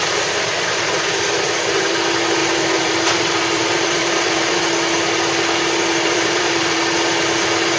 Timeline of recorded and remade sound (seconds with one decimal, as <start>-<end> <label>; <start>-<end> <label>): 0.0-2.4 recorded; 2.4-4.6 remade; 4.6-5.9 recorded; 5.9-6.8 remade; 6.8-7.8 recorded